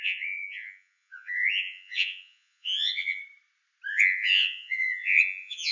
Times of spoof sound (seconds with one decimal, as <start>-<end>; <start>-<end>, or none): 0.0-3.2; 3.9-5.7